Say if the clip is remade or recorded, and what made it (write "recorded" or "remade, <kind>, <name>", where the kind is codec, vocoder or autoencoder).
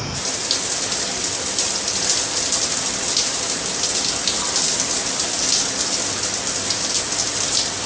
recorded